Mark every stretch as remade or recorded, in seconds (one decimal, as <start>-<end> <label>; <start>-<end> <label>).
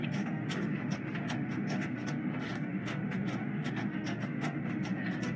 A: 0.0-5.4 remade